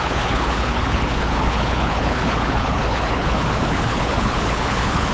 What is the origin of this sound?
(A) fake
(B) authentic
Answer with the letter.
A